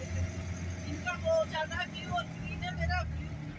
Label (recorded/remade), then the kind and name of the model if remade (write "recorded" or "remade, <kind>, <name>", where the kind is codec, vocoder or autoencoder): recorded